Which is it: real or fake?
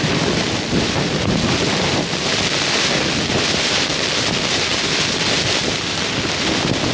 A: real